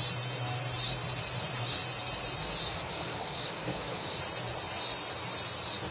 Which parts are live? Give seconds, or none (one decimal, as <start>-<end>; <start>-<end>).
0.0-2.7; 4.2-5.9